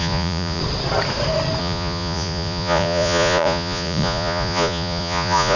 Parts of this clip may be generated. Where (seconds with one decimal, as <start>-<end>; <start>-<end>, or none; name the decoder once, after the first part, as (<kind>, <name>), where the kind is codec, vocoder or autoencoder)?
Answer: 0.0-0.6 (vocoder, Vocos); 1.6-5.6